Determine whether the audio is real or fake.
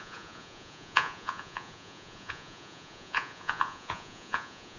fake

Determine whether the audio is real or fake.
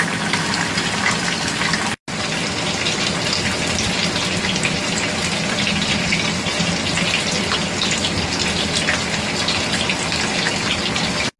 real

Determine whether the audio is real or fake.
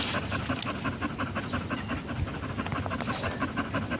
real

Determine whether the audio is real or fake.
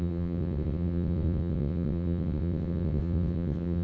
fake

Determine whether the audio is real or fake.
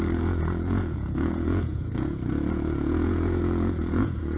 fake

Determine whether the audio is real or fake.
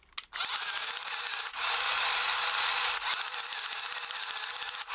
real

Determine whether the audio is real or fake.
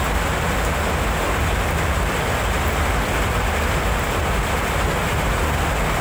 real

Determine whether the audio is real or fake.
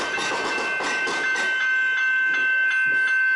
real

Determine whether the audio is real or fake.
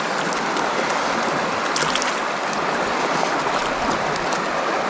real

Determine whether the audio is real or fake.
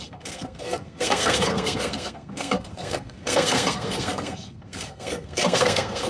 fake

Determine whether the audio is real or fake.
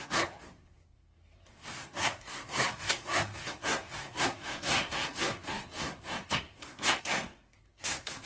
fake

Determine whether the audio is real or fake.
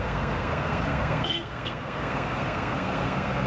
fake